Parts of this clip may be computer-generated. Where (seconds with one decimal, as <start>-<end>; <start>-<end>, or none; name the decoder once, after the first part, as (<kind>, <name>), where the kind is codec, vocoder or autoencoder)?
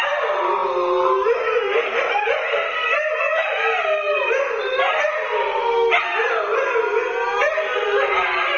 none